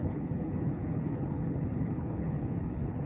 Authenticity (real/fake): fake